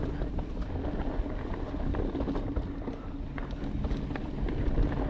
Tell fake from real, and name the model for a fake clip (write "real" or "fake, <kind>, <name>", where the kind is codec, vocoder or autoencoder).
real